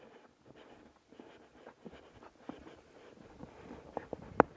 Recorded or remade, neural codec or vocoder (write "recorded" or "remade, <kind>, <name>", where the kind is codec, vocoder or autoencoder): recorded